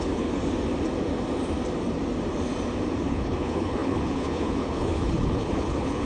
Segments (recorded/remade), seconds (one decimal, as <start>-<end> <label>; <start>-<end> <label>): 0.0-0.4 remade; 0.4-3.0 recorded; 3.0-6.1 remade